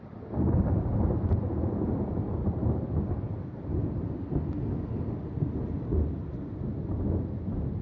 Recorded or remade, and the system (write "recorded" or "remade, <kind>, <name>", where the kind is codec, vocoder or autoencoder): recorded